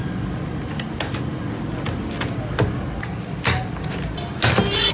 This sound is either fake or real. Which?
real